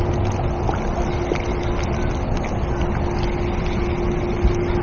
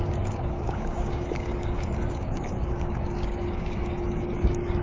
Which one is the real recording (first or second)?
first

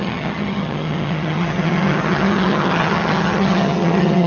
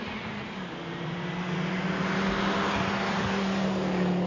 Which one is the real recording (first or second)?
second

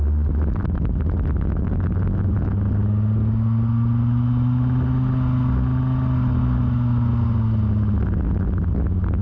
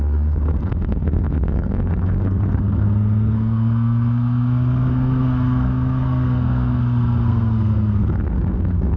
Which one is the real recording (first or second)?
first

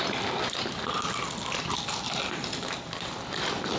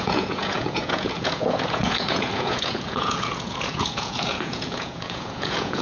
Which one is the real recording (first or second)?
first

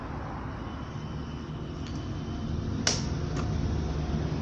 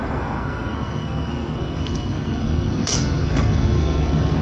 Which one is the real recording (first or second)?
first